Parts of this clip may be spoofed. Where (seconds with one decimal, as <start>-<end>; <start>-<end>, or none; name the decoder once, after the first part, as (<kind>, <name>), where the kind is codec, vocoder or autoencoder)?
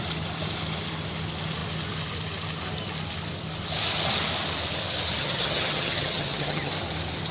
5.2-6.7 (vocoder, HiFi-GAN)